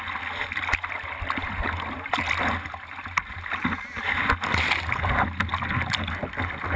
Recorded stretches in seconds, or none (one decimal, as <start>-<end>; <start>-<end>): 0.0-6.8